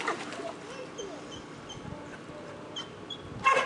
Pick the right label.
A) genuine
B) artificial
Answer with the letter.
A